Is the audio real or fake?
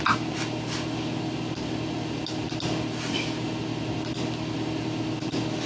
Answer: real